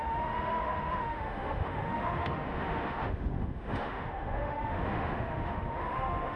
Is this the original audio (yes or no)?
no